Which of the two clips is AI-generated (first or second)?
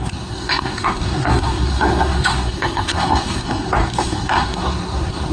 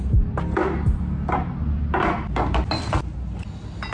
first